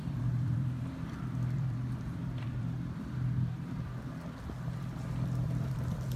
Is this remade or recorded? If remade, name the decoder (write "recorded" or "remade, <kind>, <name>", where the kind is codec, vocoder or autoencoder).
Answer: remade, vocoder, BigVGAN v2